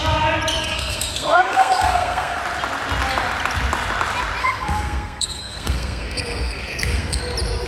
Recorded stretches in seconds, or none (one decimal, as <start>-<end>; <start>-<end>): 0.0-0.6; 2.4-4.4; 7.2-7.7